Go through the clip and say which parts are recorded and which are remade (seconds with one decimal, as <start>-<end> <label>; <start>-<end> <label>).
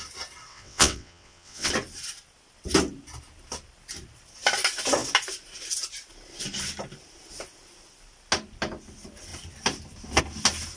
0.0-0.5 recorded; 0.5-1.7 remade; 1.7-10.8 recorded